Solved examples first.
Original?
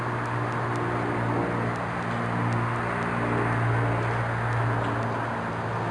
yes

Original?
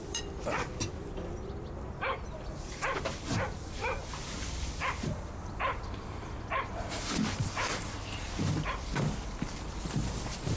no